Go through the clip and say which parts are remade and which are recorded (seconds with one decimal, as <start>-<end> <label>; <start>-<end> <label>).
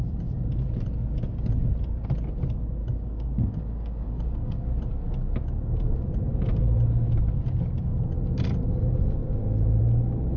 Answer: 0.0-2.8 recorded; 2.8-4.7 remade; 4.7-10.4 recorded